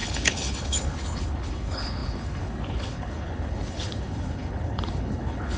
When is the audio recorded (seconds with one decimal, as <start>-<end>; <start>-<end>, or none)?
none